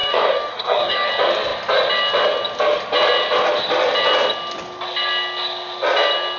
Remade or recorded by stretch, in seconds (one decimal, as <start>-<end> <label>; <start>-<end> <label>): 0.0-1.1 remade; 1.1-6.4 recorded